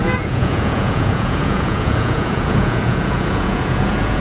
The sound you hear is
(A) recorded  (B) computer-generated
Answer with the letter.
B